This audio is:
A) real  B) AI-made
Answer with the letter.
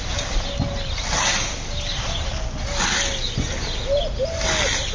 A